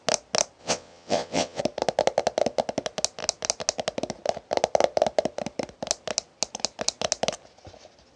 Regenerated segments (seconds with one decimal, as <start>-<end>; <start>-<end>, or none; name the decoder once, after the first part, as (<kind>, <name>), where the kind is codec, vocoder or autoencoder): 0.6-1.6 (vocoder, WaveNeXt)